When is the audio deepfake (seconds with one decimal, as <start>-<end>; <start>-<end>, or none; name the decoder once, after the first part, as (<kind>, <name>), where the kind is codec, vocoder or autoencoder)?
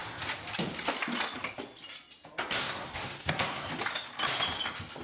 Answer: 2.6-3.7 (codec, SNAC)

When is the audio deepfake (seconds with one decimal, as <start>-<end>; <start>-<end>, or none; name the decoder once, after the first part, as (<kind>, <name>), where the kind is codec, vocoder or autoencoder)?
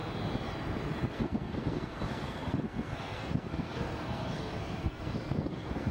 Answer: 1.1-5.9 (codec, SNAC)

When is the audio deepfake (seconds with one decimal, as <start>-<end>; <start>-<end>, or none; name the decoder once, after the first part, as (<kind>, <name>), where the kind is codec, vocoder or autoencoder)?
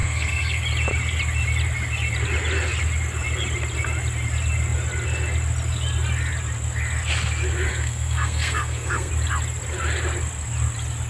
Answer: 0.0-0.6 (codec, SNAC); 7.7-9.1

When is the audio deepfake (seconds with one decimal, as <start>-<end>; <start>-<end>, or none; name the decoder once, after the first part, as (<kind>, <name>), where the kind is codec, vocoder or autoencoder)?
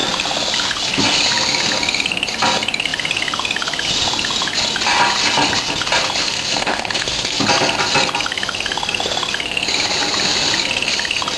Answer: 6.2-7.4 (codec, SNAC)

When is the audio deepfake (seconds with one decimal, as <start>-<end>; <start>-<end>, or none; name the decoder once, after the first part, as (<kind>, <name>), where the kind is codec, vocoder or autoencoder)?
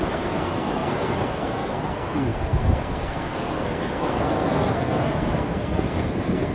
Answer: 0.0-6.5 (codec, SNAC)